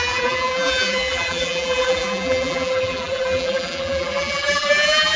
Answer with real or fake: fake